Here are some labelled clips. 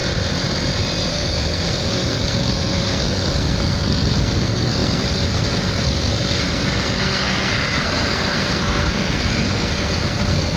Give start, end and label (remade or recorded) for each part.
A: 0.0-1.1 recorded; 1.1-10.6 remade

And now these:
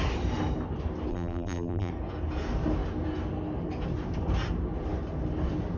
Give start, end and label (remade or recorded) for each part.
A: 0.0-1.1 recorded; 1.1-1.9 remade; 1.9-5.8 recorded

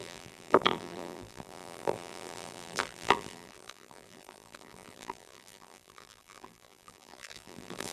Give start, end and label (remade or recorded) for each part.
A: 0.0-7.9 remade

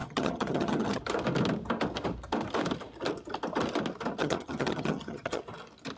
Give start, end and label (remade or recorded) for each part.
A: 0.0-1.0 remade; 1.0-4.2 recorded; 4.2-5.4 remade; 5.4-6.0 recorded